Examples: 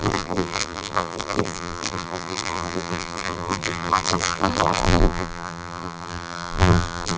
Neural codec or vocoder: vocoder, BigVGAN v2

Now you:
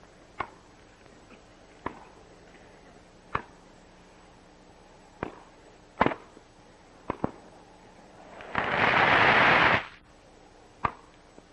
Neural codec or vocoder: none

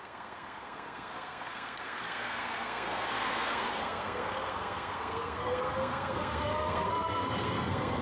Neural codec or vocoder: codec, SNAC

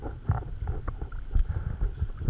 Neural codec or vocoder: none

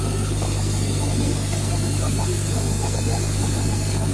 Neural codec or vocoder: codec, SNAC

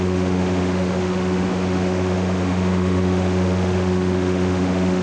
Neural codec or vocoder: autoencoder, DAC-VAE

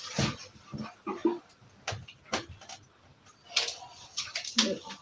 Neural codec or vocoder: none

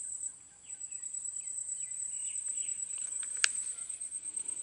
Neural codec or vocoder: none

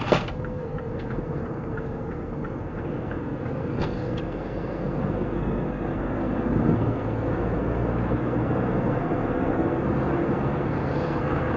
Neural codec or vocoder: codec, SNAC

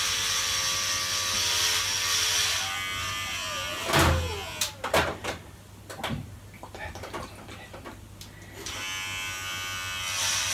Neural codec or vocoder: none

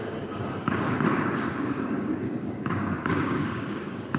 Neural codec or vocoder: codec, DAC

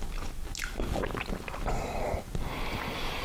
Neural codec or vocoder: none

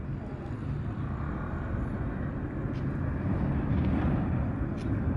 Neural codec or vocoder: none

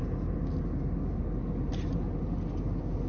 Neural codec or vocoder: none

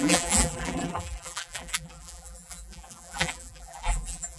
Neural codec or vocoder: vocoder, BigVGAN v2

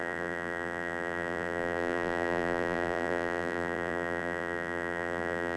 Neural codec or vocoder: vocoder, BigVGAN v2